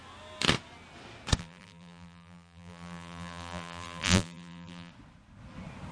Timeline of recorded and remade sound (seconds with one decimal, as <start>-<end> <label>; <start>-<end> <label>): 0.0-1.4 recorded; 1.4-4.9 remade; 4.9-5.9 recorded